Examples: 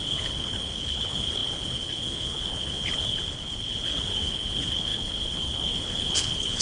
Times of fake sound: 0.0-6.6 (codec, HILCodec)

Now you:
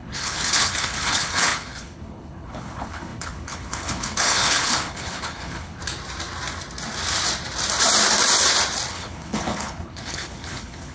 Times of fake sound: 0.0-5.8 (codec, HILCodec); 8.9-10.9

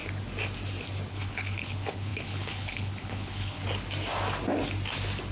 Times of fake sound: 1.1-3.6 (codec, HILCodec)